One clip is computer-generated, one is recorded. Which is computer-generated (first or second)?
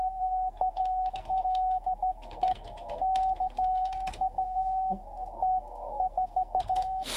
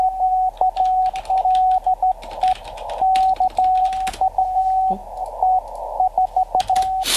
first